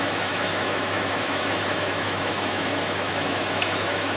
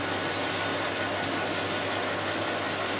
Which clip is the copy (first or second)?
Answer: first